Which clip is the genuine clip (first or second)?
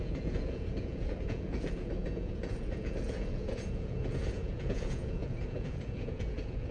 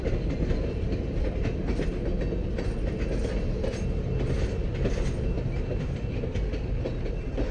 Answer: second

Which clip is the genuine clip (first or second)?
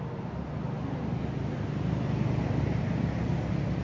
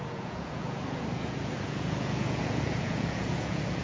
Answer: first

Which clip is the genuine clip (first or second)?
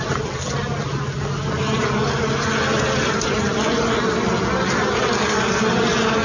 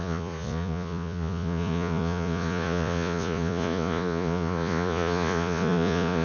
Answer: first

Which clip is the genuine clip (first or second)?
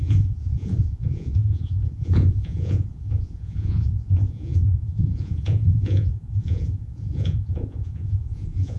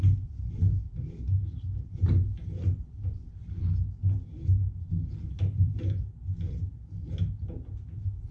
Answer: second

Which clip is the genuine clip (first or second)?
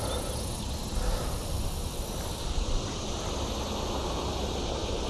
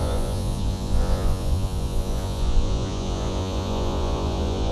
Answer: first